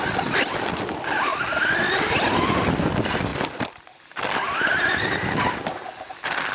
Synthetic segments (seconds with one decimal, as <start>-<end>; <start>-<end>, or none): none